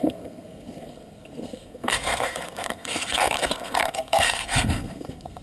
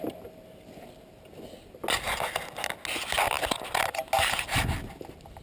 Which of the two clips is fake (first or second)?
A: first